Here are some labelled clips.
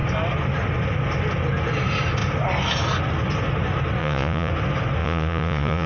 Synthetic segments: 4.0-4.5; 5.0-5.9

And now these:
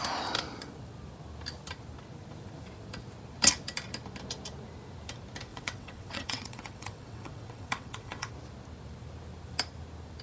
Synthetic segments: 5.5-8.3

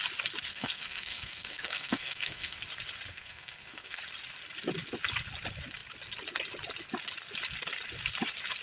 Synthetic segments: 0.5-2.6; 3.1-4.0

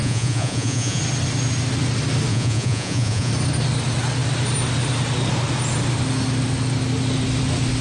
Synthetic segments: 0.0-1.0; 2.3-3.3

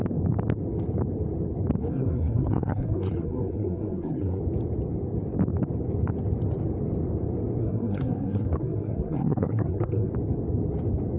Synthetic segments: 1.8-4.4; 7.6-10.1

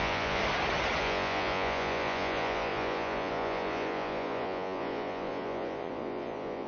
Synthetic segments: 0.0-0.4; 1.0-6.7